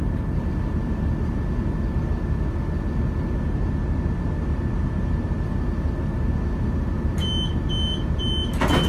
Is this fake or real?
real